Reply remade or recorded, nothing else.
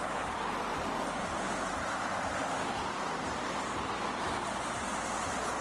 remade